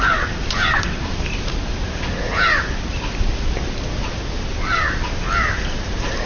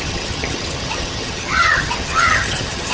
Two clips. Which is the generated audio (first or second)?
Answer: second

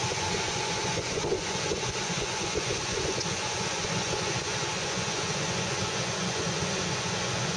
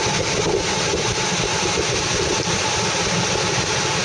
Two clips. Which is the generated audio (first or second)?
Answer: first